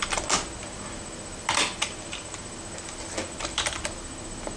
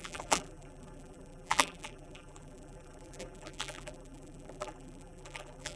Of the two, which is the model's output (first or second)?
second